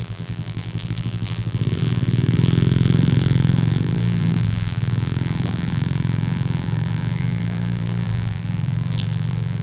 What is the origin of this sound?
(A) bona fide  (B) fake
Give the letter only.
B